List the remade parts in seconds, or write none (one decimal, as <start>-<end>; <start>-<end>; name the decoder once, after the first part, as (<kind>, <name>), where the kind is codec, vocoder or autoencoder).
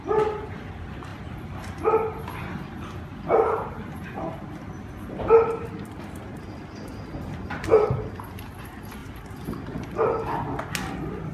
none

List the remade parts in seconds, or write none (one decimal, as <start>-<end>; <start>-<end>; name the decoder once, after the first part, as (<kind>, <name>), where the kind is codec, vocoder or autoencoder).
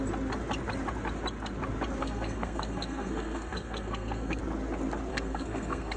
2.0-4.4 (codec, SNAC); 5.1-6.0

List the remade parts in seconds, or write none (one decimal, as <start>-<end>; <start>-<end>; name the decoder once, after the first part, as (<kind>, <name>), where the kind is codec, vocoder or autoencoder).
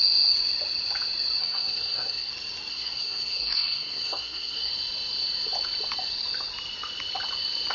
1.4-2.3 (codec, SNAC); 2.7-4.7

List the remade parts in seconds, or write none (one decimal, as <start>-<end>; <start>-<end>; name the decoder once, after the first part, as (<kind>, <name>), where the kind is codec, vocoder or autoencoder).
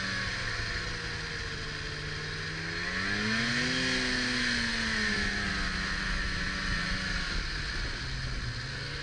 none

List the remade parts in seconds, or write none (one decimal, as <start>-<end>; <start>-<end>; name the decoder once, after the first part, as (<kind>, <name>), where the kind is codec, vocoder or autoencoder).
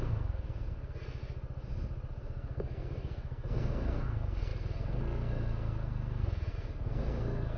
0.0-1.2 (codec, SNAC); 2.2-7.6